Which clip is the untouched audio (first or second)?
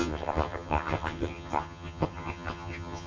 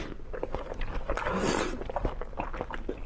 second